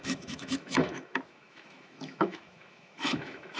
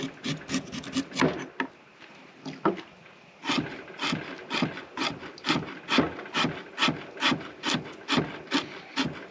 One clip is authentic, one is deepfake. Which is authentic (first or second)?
second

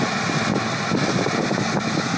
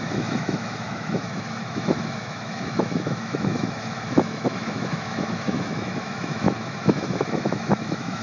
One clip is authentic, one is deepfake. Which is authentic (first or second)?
first